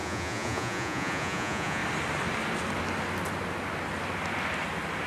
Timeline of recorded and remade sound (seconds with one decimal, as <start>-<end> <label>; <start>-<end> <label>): 0.0-1.8 remade; 1.8-5.1 recorded